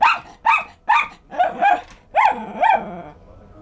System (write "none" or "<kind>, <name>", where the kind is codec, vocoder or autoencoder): none